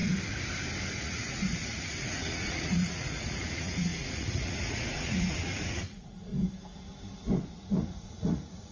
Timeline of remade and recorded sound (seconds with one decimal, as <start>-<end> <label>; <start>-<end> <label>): 0.0-1.0 recorded; 1.0-6.3 remade; 6.3-7.5 recorded; 7.5-8.7 remade